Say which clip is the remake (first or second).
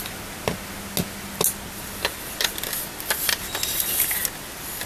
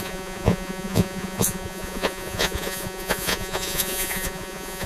second